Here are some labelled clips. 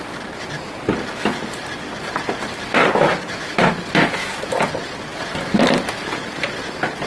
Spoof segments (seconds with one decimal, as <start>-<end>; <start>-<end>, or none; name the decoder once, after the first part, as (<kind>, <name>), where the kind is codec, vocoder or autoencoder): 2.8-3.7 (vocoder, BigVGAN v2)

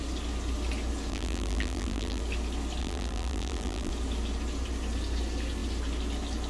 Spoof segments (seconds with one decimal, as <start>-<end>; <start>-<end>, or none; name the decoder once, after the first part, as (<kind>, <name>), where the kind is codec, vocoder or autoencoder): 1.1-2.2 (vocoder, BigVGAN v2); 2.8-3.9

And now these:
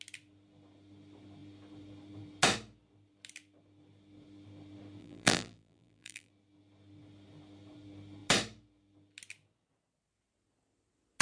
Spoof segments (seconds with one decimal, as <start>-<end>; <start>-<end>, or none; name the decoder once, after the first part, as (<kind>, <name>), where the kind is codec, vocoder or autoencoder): 5.0-6.3 (vocoder, BigVGAN v2)

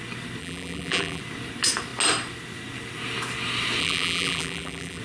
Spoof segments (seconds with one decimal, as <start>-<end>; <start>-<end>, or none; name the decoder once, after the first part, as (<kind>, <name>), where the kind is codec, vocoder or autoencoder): 0.4-1.2 (vocoder, BigVGAN v2); 3.8-5.0

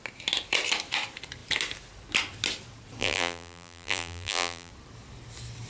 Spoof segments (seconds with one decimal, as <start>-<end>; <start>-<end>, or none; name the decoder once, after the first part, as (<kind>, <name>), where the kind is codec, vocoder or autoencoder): 3.0-4.7 (vocoder, BigVGAN v2)